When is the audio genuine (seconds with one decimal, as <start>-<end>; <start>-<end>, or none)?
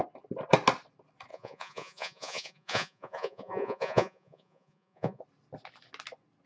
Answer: 0.0-1.3; 5.2-6.5